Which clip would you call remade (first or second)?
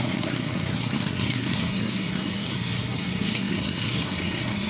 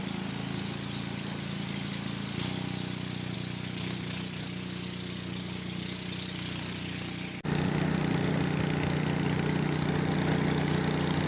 first